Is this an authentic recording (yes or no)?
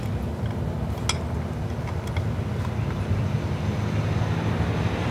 yes